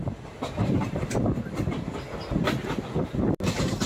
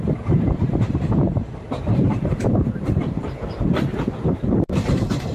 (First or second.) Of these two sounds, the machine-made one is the second